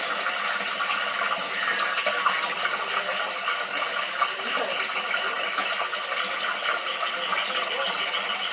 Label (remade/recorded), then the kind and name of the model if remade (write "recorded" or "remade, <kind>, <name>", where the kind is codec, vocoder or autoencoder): recorded